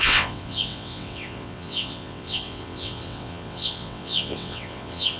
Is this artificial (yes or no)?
yes